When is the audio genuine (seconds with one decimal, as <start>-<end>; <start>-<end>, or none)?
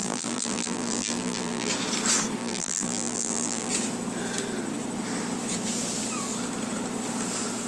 1.7-2.4; 3.7-7.7